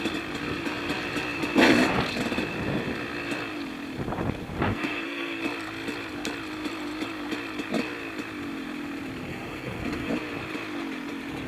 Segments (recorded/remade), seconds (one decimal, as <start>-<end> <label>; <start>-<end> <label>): 0.0-4.7 recorded; 4.7-5.4 remade; 5.4-9.3 recorded; 9.3-10.1 remade; 10.1-11.5 recorded